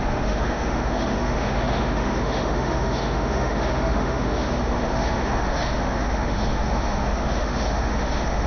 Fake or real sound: fake